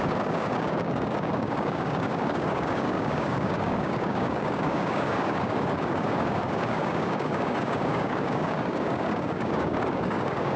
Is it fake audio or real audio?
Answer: fake